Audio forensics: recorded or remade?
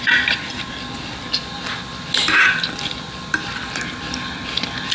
recorded